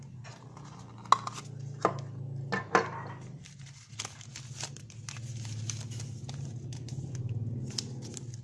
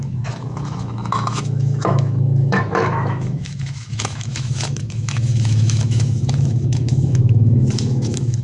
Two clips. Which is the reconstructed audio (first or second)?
second